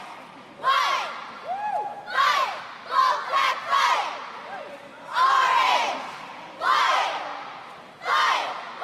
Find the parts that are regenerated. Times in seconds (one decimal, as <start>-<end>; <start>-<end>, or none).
1.9-2.6; 5.1-7.9